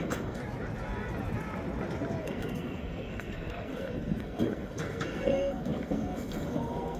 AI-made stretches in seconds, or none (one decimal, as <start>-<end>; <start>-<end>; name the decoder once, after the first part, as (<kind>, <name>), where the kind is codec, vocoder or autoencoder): 0.0-0.4 (codec, SNAC); 2.2-7.0